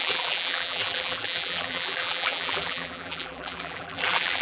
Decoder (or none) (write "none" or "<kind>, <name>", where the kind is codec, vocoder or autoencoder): vocoder, BigVGAN v2